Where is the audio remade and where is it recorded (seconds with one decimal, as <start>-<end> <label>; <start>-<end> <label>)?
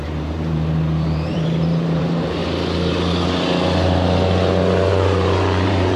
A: 0.0-2.4 remade; 2.4-4.9 recorded; 4.9-6.0 remade